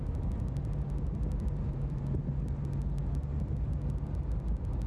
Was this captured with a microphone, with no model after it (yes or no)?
yes